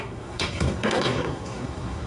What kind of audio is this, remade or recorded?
remade